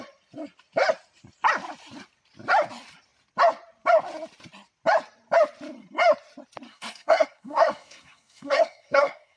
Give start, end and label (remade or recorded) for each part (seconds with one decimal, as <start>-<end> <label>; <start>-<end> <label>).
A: 0.0-6.7 recorded; 6.7-9.4 remade